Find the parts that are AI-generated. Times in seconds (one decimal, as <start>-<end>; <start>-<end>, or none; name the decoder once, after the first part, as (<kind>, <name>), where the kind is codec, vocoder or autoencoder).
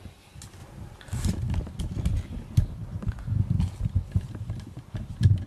none